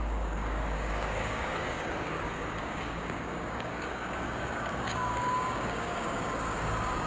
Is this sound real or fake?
fake